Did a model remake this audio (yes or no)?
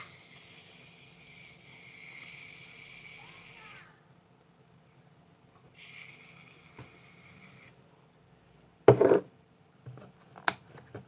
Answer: no